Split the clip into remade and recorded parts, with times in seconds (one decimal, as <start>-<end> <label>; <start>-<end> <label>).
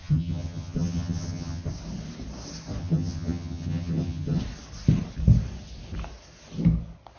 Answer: 0.0-1.7 remade; 1.7-2.8 recorded; 2.8-4.4 remade; 4.4-7.2 recorded